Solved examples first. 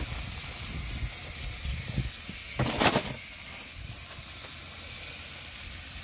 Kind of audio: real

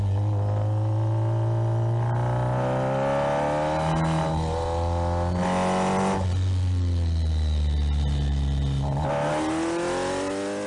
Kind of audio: real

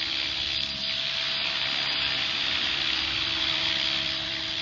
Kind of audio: fake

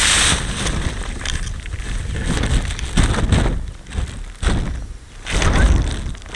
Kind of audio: real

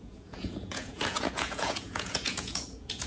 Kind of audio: fake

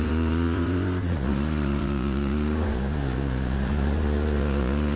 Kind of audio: fake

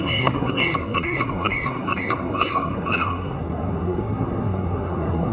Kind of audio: fake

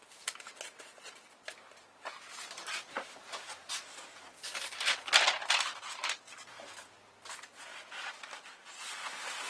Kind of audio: real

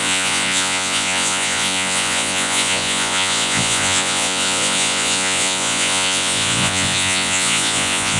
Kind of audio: fake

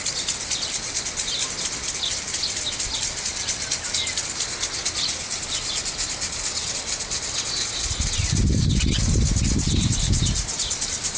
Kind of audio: real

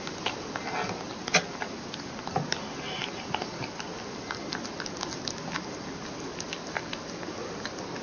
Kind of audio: real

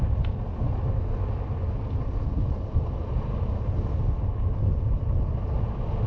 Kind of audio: real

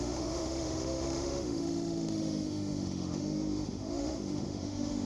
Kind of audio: fake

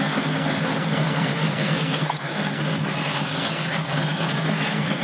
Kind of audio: fake